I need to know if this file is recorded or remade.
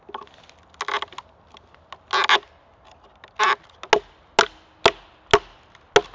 recorded